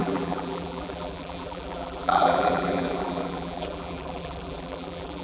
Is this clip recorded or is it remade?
remade